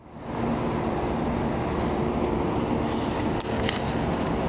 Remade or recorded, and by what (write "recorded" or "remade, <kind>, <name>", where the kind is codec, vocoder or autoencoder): recorded